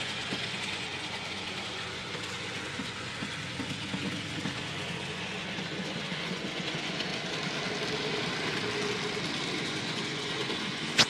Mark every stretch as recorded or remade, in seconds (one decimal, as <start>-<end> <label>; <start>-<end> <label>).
0.0-7.1 remade; 7.1-9.6 recorded; 9.6-11.1 remade